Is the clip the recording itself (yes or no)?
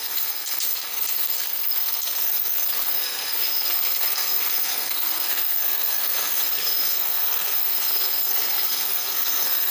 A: no